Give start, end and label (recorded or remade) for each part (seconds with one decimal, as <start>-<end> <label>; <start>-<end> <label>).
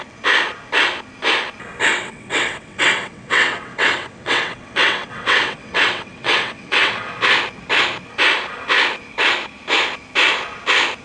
0.0-1.9 recorded; 1.9-6.9 remade; 6.9-11.0 recorded